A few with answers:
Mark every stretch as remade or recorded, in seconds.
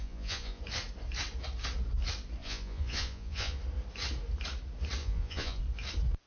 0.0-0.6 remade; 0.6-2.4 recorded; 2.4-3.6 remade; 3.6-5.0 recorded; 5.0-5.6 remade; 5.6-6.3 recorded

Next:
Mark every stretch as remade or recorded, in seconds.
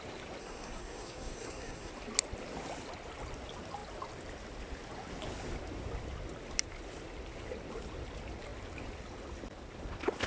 0.0-0.4 recorded; 0.4-1.9 remade; 1.9-10.3 recorded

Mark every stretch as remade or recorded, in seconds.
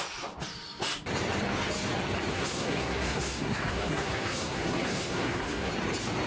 0.0-2.3 recorded; 2.3-5.7 remade; 5.7-6.3 recorded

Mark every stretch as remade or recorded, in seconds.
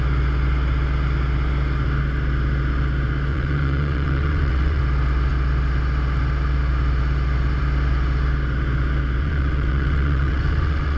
0.0-3.3 recorded; 3.3-4.8 remade; 4.8-9.2 recorded; 9.2-11.0 remade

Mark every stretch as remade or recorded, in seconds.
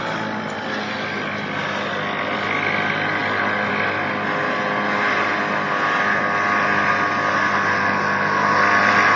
0.0-9.2 recorded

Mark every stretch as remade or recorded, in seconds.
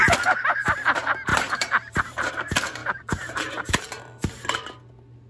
0.0-1.3 recorded; 1.3-2.3 remade; 2.3-2.8 recorded; 2.8-4.0 remade; 4.0-5.3 recorded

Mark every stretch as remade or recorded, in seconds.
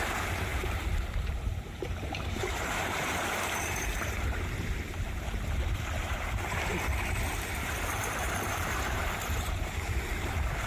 0.0-6.7 remade; 6.7-7.3 recorded; 7.3-10.7 remade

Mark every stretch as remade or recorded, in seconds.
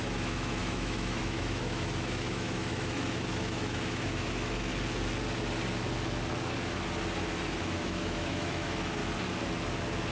0.0-4.7 remade; 4.7-7.6 recorded; 7.6-9.0 remade; 9.0-10.1 recorded